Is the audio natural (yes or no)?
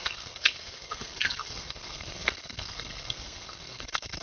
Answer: no